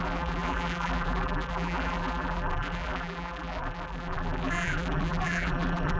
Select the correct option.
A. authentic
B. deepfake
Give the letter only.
B